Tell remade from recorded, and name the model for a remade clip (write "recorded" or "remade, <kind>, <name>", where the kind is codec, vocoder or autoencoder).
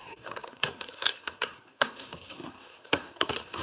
remade, codec, SNAC